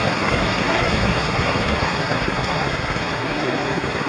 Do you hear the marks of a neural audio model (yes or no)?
yes